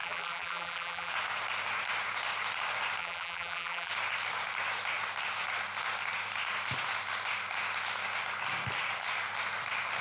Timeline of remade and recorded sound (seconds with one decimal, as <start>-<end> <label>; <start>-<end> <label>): 0.0-1.1 remade; 1.1-3.0 recorded; 3.0-3.9 remade; 3.9-10.0 recorded